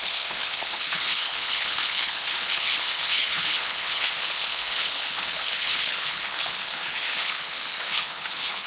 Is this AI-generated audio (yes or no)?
yes